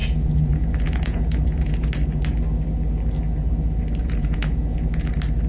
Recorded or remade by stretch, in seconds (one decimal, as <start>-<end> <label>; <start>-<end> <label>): 0.0-1.9 remade; 1.9-4.0 recorded; 4.0-5.1 remade; 5.1-5.5 recorded